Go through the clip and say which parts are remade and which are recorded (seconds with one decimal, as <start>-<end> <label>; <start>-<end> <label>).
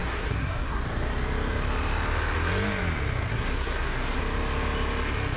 0.0-0.8 remade; 0.8-3.3 recorded; 3.3-4.2 remade; 4.2-5.4 recorded